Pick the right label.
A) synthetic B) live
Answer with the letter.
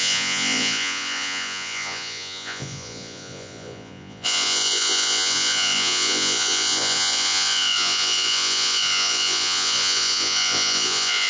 A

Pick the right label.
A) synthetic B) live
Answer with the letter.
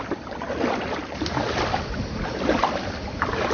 B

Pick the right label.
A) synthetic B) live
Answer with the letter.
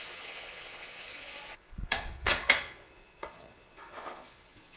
A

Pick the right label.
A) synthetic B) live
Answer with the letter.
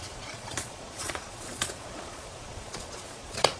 A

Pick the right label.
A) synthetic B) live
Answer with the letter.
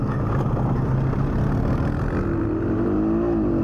B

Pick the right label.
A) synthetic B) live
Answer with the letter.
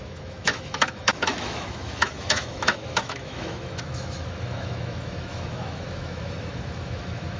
A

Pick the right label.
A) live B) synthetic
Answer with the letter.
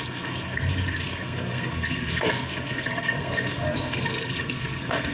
B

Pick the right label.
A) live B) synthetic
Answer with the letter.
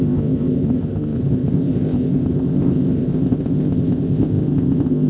B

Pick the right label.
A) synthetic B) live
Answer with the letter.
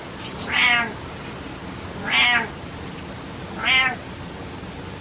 B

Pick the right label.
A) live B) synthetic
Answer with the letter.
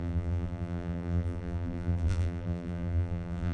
B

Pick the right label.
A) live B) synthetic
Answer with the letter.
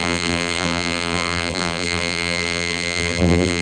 B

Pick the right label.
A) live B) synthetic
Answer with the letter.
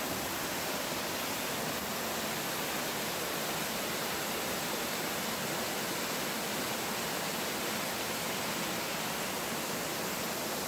A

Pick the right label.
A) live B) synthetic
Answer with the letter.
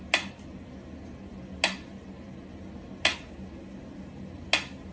A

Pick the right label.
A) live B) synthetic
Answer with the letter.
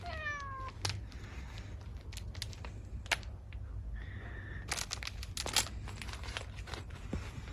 A